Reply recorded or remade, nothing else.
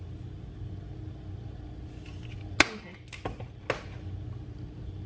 recorded